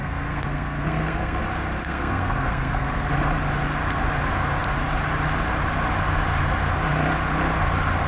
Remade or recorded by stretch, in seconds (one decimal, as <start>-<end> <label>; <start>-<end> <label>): 0.0-1.4 remade; 1.4-1.8 recorded; 1.8-3.1 remade; 3.1-8.1 recorded